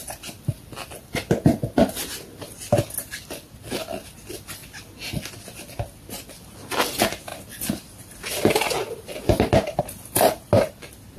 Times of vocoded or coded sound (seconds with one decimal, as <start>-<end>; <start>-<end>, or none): 0.0-2.1; 7.3-9.8